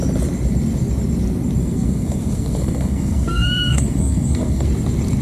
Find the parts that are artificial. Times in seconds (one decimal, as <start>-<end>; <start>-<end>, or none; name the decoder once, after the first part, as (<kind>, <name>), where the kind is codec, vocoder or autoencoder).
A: 1.6-4.7 (codec, SNAC)